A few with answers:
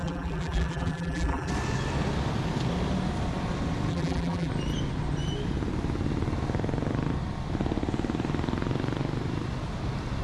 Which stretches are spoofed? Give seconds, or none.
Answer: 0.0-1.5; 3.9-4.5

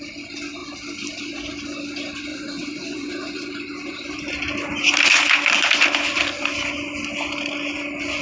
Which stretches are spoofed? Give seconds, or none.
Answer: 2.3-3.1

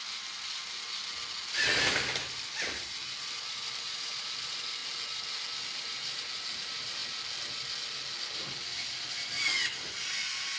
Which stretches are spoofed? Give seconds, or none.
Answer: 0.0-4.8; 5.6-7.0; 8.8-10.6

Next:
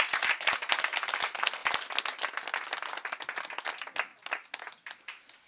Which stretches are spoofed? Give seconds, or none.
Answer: none

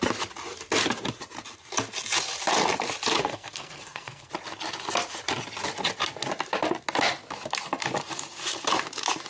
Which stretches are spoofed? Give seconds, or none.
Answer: 3.2-4.3

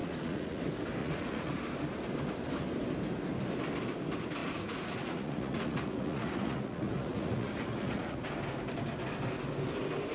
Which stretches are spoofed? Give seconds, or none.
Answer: 0.0-0.6; 1.0-1.6; 4.4-8.3

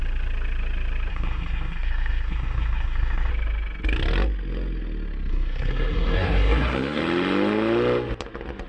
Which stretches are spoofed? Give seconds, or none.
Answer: 1.1-3.3; 5.3-7.0

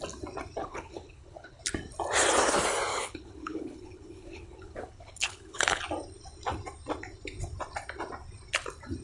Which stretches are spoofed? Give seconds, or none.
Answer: 0.6-1.6; 2.9-5.8